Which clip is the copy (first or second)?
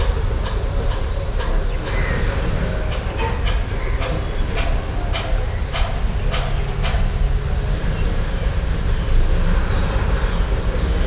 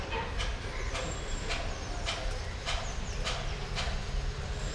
second